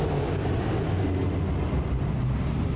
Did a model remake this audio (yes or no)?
no